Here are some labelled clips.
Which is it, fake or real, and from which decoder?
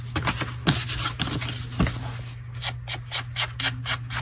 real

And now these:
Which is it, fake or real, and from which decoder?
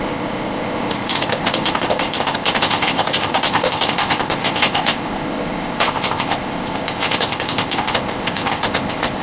fake, codec, ZipCodec